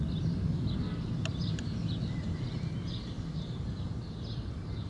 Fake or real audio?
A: real